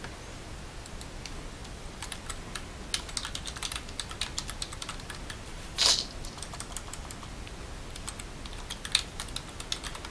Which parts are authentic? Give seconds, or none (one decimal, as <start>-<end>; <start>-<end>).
0.0-10.1